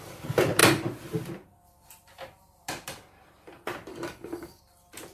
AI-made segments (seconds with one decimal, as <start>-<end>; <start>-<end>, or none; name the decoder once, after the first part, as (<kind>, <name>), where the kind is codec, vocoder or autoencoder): 3.9-4.6 (codec, DAC)